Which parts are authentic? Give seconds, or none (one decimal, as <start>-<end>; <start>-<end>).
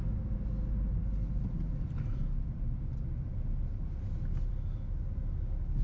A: 0.0-5.8